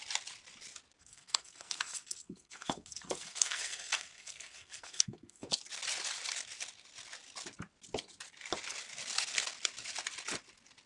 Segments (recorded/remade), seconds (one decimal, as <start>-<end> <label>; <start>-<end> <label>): 0.0-1.0 recorded; 1.0-5.5 remade; 5.5-10.9 recorded